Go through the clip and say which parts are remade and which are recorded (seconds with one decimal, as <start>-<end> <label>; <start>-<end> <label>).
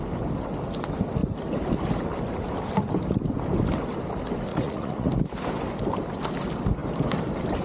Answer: 0.0-4.5 recorded; 4.5-5.1 remade; 5.1-7.6 recorded